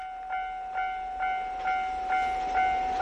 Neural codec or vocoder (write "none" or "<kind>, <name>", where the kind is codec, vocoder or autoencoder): none